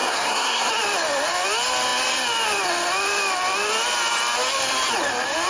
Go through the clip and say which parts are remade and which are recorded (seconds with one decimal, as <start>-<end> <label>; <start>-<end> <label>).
0.0-0.7 remade; 0.7-5.5 recorded